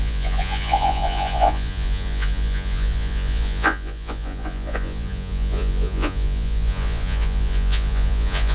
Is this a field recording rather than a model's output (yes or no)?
no